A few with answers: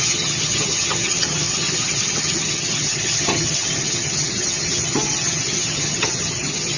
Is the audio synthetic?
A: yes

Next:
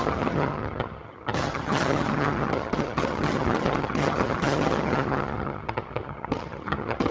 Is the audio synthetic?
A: yes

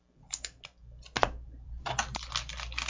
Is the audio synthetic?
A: no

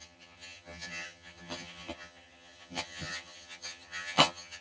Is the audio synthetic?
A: yes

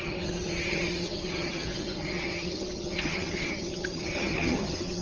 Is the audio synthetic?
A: yes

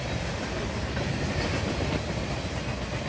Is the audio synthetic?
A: no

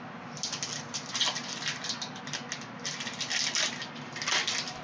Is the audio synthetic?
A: no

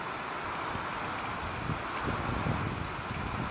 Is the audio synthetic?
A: no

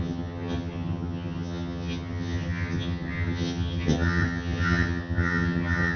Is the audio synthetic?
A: yes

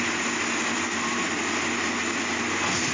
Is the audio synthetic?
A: no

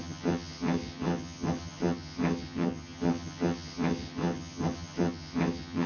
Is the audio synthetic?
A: yes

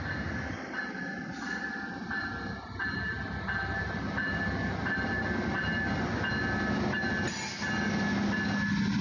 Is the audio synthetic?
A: no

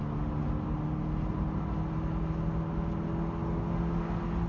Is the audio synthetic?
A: no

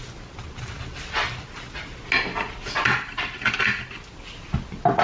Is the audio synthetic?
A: no